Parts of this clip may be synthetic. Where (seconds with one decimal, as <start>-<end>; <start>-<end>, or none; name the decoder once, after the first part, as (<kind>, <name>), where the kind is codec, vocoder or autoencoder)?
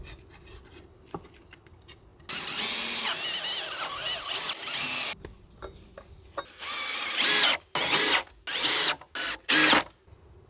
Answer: none